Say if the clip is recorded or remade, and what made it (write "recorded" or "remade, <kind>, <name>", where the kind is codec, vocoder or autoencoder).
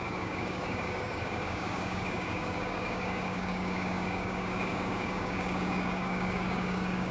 remade, codec, DAC